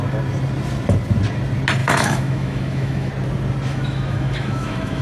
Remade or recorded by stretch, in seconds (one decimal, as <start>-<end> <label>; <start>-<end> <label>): 0.0-1.8 recorded; 1.8-3.1 remade; 3.1-3.7 recorded; 3.7-5.0 remade